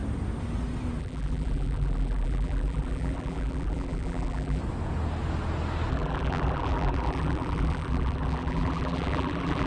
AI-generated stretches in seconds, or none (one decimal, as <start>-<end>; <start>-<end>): 1.0-4.6; 5.9-9.7

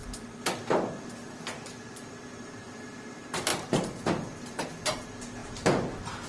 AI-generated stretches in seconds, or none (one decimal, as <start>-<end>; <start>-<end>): 1.4-6.3

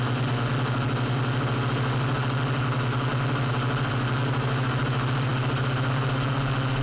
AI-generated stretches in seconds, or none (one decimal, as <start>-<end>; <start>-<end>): none

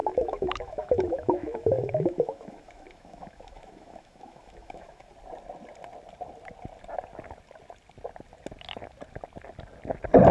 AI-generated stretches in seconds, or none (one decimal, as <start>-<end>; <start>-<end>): 0.0-5.1

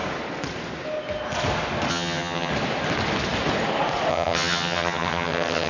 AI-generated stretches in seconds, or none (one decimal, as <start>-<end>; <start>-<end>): 1.9-2.5; 4.1-5.7

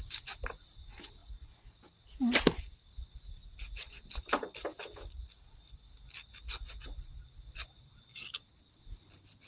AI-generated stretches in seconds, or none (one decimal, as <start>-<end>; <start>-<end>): none